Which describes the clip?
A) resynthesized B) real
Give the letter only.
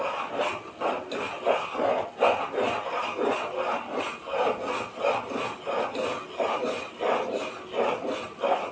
B